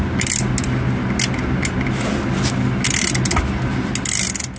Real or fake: real